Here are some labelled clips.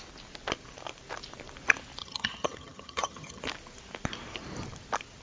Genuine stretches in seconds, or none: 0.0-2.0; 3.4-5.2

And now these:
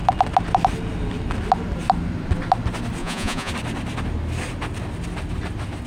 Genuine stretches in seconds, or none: 0.0-3.0; 3.5-5.9

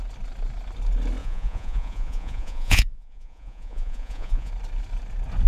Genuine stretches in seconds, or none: 0.0-1.2; 4.5-5.5

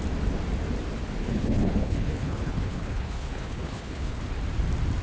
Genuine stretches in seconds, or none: 0.0-1.2; 4.2-5.0

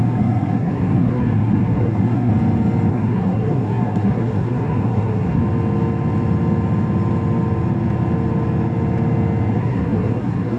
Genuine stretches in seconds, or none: 2.3-2.9; 5.4-9.5

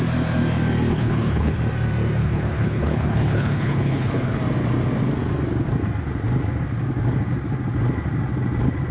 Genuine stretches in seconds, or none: 0.0-0.9; 1.6-2.2; 4.4-8.9

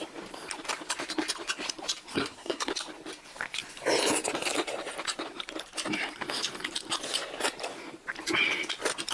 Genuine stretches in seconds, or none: 0.0-2.1; 2.7-9.1